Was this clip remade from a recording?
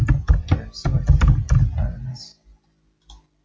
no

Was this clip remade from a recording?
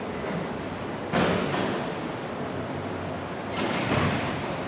no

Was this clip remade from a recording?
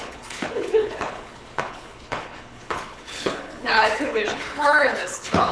yes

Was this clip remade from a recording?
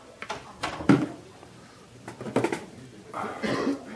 no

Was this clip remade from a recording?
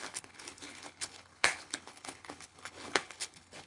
yes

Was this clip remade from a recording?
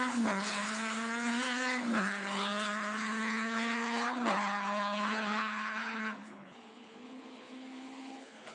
yes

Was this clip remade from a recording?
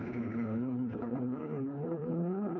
yes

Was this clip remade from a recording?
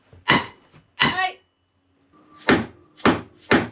no